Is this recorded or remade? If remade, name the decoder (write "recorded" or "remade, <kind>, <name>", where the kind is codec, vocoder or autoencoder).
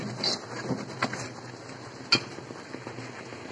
recorded